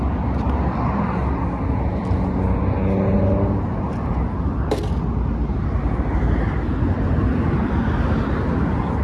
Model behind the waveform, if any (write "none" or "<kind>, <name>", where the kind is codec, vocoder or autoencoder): none